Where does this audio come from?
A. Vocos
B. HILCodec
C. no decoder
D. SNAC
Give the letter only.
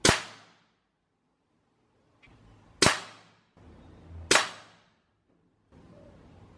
C